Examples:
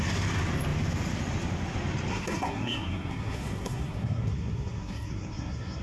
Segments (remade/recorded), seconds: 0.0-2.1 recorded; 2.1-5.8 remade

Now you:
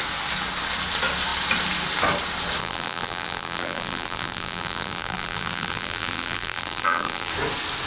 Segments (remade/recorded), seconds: 0.0-2.6 recorded; 2.6-7.3 remade; 7.3-7.9 recorded